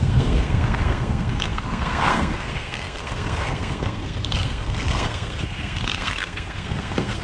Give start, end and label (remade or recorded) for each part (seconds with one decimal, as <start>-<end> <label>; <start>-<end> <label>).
0.0-7.2 remade